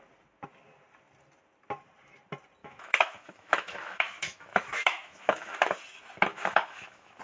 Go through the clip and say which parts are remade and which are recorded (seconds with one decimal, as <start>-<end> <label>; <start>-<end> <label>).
0.0-2.6 recorded; 2.6-5.7 remade; 5.7-6.3 recorded; 6.3-7.2 remade